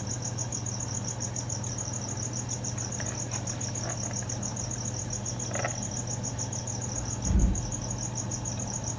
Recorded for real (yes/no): yes